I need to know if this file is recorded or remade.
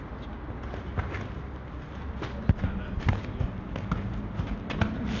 recorded